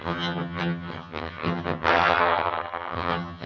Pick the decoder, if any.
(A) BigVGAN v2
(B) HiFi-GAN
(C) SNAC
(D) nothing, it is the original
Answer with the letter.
B